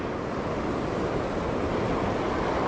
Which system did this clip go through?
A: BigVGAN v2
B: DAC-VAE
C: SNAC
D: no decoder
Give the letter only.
D